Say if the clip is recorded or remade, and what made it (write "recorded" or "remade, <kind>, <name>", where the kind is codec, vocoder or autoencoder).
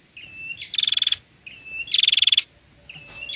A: recorded